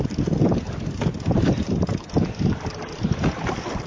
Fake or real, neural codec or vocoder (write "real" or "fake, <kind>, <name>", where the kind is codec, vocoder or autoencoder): real